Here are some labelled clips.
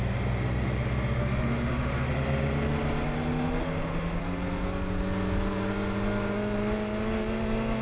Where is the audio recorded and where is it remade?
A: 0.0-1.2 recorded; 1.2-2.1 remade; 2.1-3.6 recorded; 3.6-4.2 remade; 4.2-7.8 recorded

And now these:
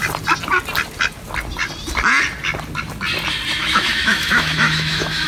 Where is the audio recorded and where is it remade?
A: 0.0-3.6 recorded; 3.6-5.3 remade

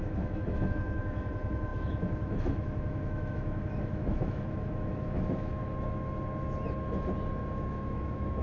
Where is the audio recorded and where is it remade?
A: 0.0-5.6 remade; 5.6-7.5 recorded; 7.5-8.4 remade

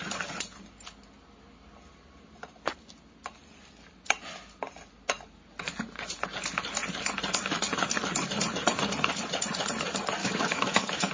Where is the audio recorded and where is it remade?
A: 0.0-10.2 recorded; 10.2-11.1 remade

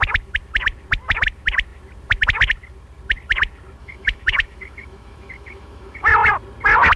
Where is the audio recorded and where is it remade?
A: 0.0-3.8 recorded; 3.8-6.1 remade; 6.1-7.0 recorded

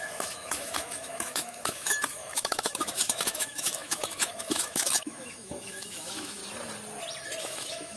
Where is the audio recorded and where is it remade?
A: 0.0-6.4 remade; 6.4-7.4 recorded; 7.4-8.0 remade

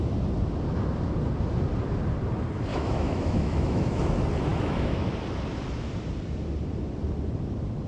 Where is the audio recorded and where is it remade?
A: 0.0-2.7 recorded; 2.7-4.0 remade; 4.0-4.5 recorded; 4.5-5.1 remade; 5.1-7.9 recorded